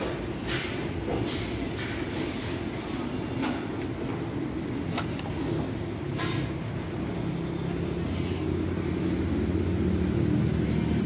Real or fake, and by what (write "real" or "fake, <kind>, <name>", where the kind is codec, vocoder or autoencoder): real